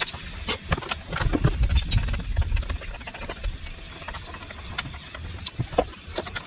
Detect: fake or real real